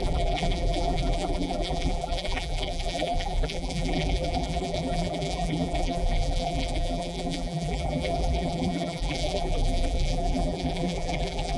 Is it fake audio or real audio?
fake